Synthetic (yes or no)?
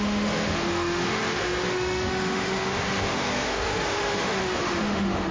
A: yes